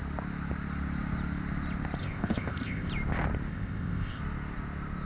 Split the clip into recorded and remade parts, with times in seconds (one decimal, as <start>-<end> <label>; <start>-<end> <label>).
0.0-2.0 recorded; 2.0-2.9 remade; 2.9-3.5 recorded; 3.5-4.2 remade; 4.2-5.1 recorded